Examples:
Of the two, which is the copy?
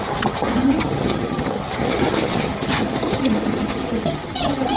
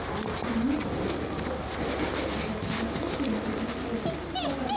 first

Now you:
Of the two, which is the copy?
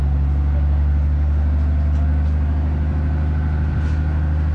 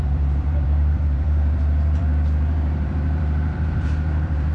second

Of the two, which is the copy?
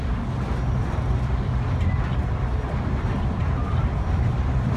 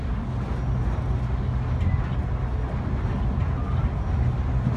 first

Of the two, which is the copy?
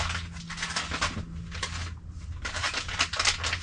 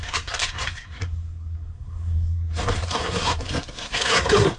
second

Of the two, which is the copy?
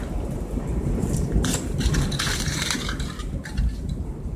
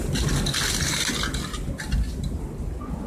first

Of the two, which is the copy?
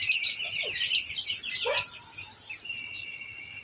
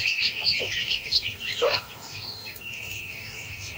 second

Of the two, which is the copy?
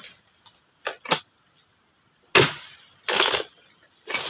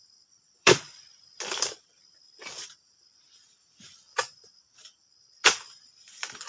second